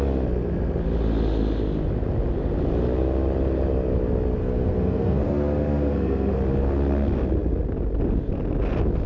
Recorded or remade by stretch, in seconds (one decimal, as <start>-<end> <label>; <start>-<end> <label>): 0.0-4.4 recorded; 4.4-6.3 remade; 6.3-9.1 recorded

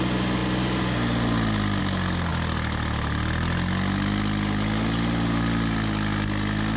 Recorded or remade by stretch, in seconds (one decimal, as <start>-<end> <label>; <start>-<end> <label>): 0.0-6.8 recorded

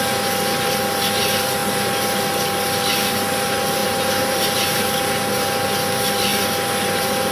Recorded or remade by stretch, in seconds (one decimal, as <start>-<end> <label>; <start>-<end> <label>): 0.0-3.8 recorded; 3.8-5.3 remade; 5.3-7.3 recorded